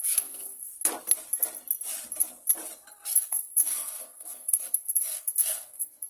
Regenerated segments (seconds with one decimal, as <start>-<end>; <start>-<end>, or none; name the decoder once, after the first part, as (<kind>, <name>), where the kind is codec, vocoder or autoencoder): 0.0-0.7 (codec, SNAC); 3.1-6.1